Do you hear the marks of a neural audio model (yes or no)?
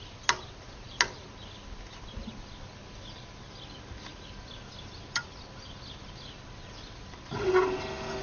no